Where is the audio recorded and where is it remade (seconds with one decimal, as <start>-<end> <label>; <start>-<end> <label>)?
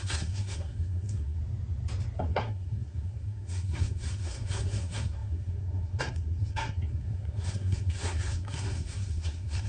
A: 0.0-1.4 remade; 1.4-2.2 recorded; 2.2-9.7 remade